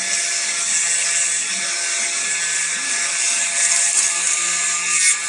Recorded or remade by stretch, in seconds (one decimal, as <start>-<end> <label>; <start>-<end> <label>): 0.0-2.6 recorded; 2.6-5.3 remade